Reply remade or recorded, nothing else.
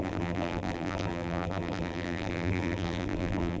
remade